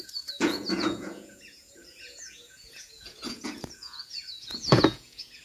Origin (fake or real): fake